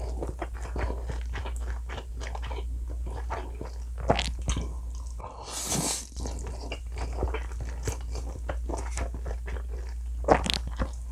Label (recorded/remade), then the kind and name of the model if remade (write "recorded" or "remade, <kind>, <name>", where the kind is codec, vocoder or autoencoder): recorded